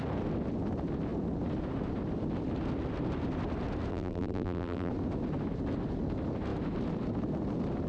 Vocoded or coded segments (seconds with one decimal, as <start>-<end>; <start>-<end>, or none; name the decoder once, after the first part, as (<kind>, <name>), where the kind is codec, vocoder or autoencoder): 3.9-4.9 (vocoder, BigVGAN v2)